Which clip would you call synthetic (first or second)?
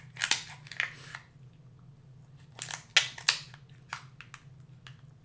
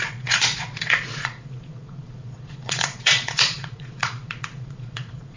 second